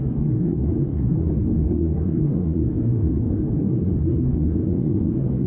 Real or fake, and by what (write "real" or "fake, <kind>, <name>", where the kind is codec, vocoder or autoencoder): fake, codec, SNAC